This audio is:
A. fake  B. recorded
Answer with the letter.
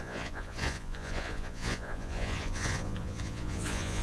A